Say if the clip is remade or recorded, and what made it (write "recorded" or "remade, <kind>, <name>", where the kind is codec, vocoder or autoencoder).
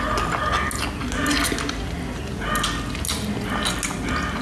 recorded